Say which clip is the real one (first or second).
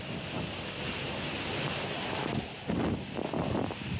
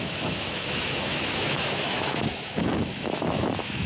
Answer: first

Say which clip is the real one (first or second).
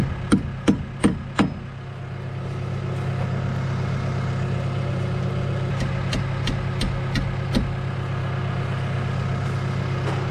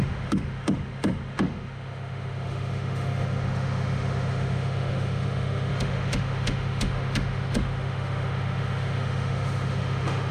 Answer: first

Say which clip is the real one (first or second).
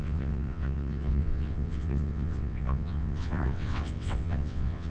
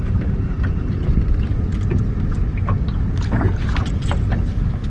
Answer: second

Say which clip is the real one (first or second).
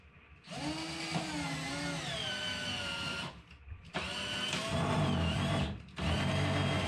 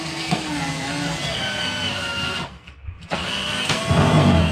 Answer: first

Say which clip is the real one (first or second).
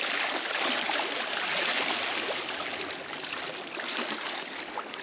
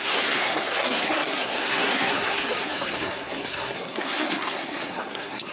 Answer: first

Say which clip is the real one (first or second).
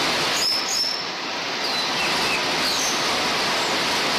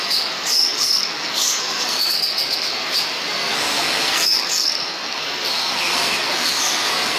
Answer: first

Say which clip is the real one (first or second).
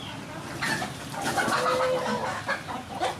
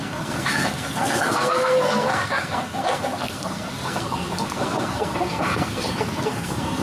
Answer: first